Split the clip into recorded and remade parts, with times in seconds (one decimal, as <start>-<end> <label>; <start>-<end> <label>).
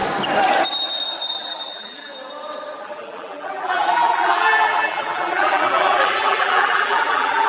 0.0-1.3 recorded; 1.3-2.1 remade; 2.1-2.8 recorded; 2.8-7.5 remade